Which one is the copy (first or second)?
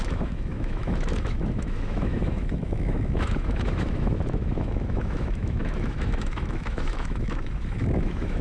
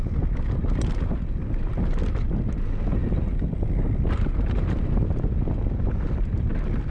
first